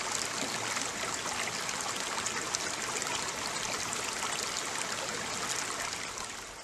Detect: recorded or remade recorded